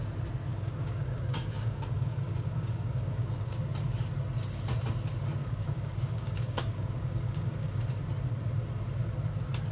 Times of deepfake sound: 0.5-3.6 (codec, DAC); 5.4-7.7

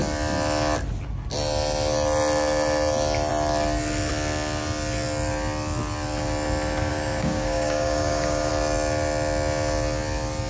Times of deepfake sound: 6.9-8.5 (codec, DAC)

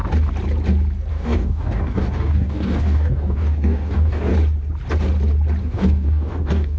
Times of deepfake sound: 1.1-4.3 (codec, DAC); 5.6-6.8

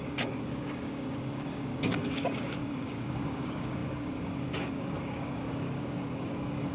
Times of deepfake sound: 0.0-6.7 (codec, DAC)

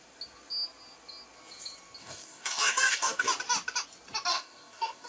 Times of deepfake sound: 2.0-3.3 (codec, DAC); 4.3-5.1

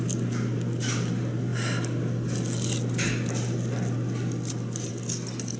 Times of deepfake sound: none